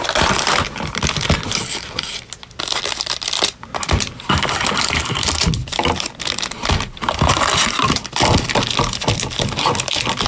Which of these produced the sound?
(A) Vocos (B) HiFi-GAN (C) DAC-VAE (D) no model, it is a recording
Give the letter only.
D